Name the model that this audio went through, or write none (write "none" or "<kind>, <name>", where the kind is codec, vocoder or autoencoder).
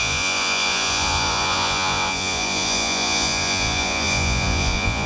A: vocoder, Vocos